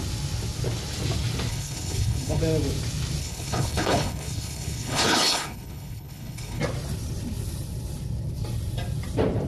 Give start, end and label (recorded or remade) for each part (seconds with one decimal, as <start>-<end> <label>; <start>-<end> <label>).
0.0-1.5 recorded; 1.5-2.4 remade; 2.4-3.2 recorded; 3.2-6.6 remade; 6.6-9.5 recorded

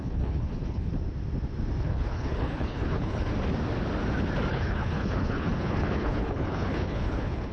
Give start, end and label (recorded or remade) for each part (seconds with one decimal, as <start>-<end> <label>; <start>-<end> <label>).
0.0-0.9 remade; 0.9-1.8 recorded; 1.8-3.3 remade; 3.3-4.5 recorded; 4.5-7.5 remade